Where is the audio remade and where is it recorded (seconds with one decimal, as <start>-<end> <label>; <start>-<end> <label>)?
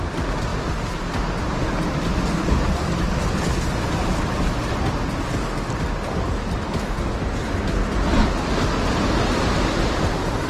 0.0-10.5 recorded